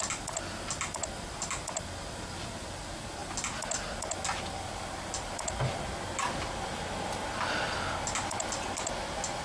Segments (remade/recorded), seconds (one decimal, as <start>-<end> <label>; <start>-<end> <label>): 0.0-9.4 recorded